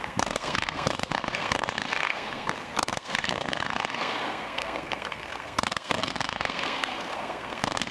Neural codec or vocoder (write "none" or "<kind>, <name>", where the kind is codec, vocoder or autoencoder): codec, SNAC